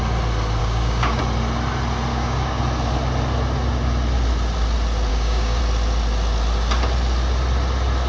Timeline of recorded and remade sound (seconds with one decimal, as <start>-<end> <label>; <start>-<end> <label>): 0.0-0.6 recorded; 0.6-1.2 remade; 1.2-2.1 recorded; 2.1-2.6 remade; 2.6-5.1 recorded; 5.1-5.6 remade; 5.6-8.1 recorded